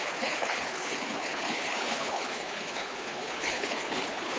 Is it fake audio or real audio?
fake